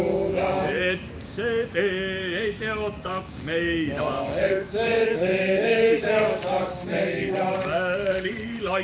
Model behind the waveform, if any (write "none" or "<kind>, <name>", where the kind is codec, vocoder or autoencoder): codec, DAC